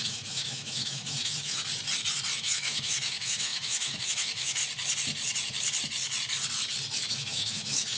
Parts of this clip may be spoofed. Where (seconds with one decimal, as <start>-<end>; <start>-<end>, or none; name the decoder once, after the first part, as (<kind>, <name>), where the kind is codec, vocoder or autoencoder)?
0.0-1.6 (autoencoder, DAC-VAE); 2.4-4.6; 7.1-8.0